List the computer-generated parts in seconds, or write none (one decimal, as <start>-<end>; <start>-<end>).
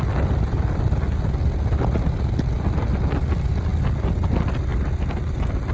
none